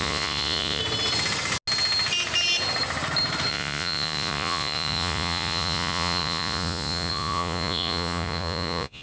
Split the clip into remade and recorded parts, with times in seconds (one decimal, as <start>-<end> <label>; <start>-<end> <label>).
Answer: 0.0-0.8 remade; 0.8-3.5 recorded; 3.5-9.0 remade